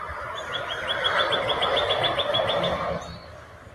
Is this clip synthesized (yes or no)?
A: no